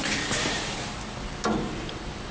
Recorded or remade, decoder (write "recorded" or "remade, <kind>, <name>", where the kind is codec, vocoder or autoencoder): recorded